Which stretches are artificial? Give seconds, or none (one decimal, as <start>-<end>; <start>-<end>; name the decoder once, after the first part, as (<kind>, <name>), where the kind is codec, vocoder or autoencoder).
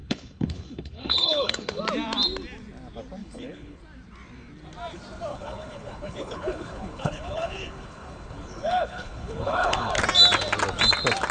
0.0-1.8 (codec, HILCodec); 3.2-3.8; 5.3-9.9